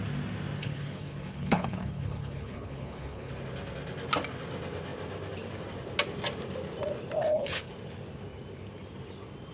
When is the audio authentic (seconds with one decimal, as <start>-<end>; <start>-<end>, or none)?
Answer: 0.0-0.6; 3.3-7.2; 7.7-9.5

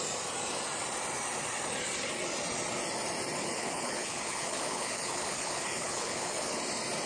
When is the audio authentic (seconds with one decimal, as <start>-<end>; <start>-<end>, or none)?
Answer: 0.0-3.4; 6.6-7.1